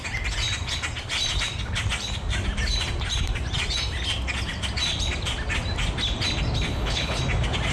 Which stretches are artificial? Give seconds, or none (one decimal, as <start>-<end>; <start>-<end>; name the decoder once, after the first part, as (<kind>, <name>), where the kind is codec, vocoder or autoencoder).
6.7-7.2 (codec, HILCodec)